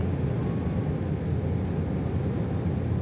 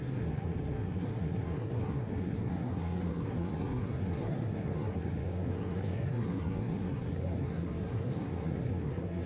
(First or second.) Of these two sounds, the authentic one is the first